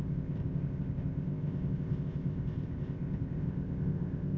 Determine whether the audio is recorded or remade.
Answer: remade